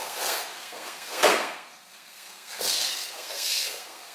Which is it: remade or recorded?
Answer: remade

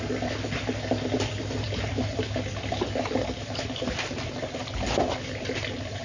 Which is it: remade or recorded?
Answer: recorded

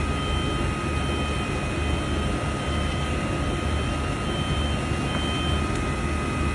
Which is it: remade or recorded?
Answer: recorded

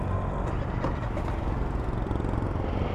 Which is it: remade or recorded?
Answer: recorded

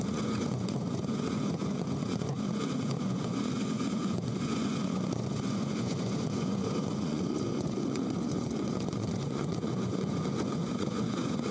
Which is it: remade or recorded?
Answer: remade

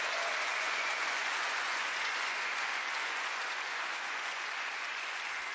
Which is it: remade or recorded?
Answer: remade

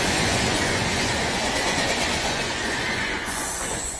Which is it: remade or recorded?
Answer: remade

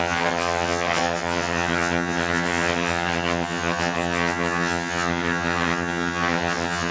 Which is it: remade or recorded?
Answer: remade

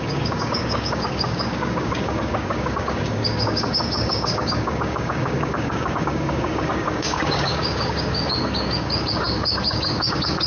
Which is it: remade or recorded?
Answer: remade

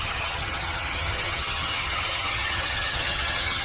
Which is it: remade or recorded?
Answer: remade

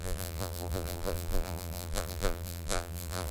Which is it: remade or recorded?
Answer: remade